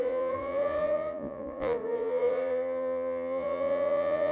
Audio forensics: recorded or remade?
remade